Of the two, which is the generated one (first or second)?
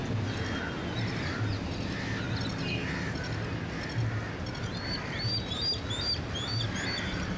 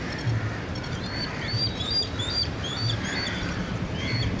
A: second